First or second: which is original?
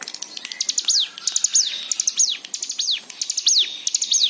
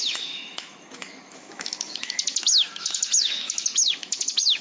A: first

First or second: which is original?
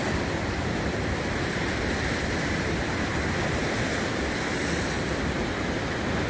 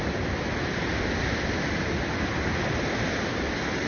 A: second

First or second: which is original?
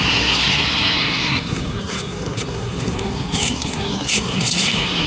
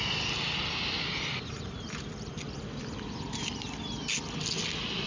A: second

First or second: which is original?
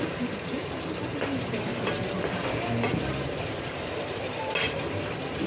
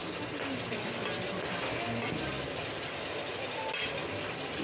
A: second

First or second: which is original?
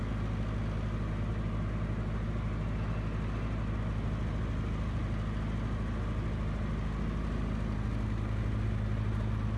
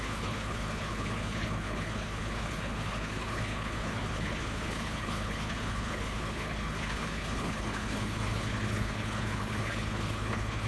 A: first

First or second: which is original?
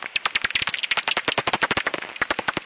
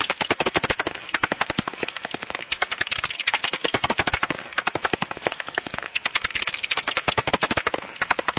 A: first